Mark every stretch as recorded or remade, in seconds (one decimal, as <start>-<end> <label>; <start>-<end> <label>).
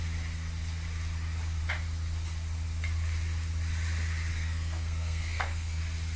0.0-4.3 recorded; 4.3-5.8 remade; 5.8-6.2 recorded